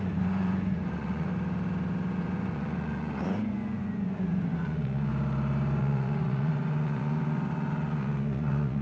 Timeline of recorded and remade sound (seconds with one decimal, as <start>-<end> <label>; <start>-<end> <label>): 0.0-1.3 remade; 1.3-2.1 recorded; 2.1-5.1 remade; 5.1-5.8 recorded; 5.8-8.8 remade